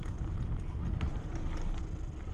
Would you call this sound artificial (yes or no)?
no